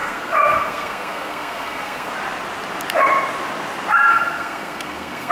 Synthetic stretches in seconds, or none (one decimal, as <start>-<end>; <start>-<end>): 0.0-2.1; 4.1-5.3